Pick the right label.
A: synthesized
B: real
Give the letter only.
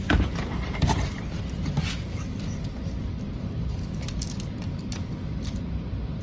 B